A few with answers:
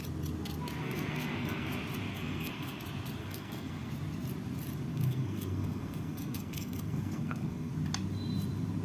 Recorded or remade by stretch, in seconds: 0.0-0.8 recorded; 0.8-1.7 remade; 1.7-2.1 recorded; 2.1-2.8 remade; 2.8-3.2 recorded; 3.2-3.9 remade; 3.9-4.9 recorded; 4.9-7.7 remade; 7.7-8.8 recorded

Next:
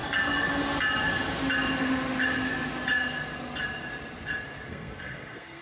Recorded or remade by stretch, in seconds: 0.0-4.7 recorded; 4.7-5.6 remade

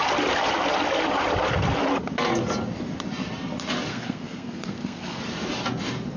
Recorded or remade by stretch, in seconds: 0.0-3.9 recorded; 3.9-5.2 remade; 5.2-6.2 recorded

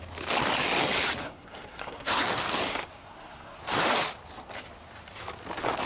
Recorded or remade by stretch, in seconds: 0.0-1.2 recorded; 1.2-2.2 remade; 2.2-2.7 recorded; 2.7-3.6 remade; 3.6-5.9 recorded

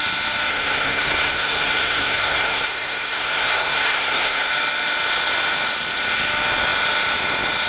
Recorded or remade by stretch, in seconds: 0.0-0.5 recorded; 0.5-4.5 remade; 4.5-7.7 recorded